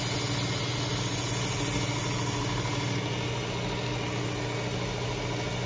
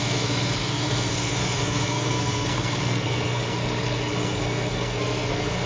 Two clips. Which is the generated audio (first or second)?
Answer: second